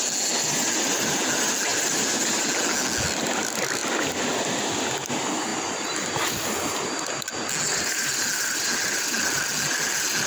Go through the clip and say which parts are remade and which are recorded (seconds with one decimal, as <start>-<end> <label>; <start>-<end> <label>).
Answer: 0.0-1.7 recorded; 1.7-2.4 remade; 2.4-10.3 recorded